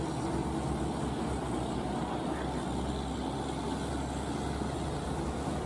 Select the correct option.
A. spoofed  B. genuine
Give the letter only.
B